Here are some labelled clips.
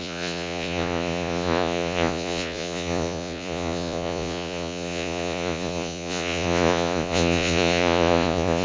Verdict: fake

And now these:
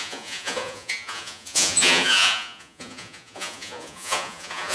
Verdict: fake